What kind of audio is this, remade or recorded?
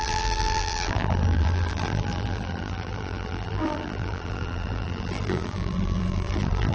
remade